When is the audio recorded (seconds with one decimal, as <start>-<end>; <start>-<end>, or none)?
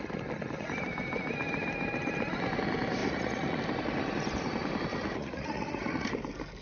0.0-3.0; 3.6-4.9; 6.1-6.6